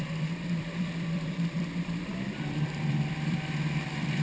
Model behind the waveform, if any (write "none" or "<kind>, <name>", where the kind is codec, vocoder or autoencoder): vocoder, BigVGAN v2